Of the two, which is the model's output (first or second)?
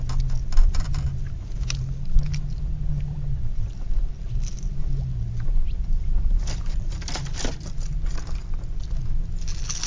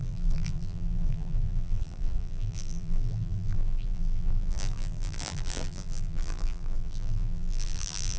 second